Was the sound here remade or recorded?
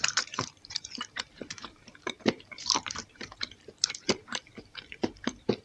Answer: remade